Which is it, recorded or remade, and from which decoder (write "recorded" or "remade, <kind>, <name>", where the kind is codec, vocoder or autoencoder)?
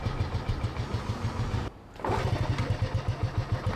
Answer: recorded